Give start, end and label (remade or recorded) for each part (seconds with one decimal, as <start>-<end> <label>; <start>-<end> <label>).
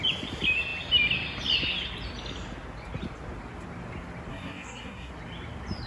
0.0-4.3 recorded; 4.3-5.1 remade; 5.1-5.9 recorded